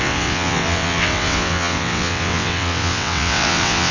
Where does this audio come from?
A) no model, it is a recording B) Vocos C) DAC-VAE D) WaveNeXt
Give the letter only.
D